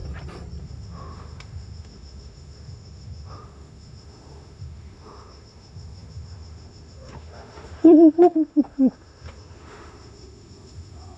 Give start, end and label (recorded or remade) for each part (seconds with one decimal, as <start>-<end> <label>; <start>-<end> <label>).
0.0-0.6 recorded; 0.6-11.2 remade